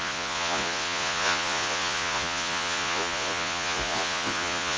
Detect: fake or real fake